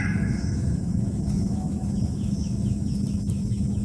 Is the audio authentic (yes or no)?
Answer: no